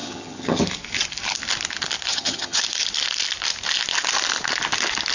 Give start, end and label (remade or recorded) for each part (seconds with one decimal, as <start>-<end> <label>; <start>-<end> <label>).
0.0-0.6 remade; 0.6-2.1 recorded; 2.1-2.6 remade; 2.6-5.1 recorded